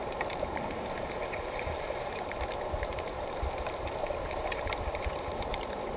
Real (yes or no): no